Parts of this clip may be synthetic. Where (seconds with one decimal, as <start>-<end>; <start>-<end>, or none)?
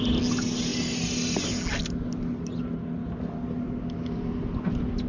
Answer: none